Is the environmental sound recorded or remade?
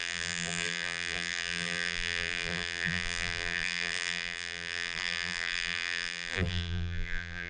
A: remade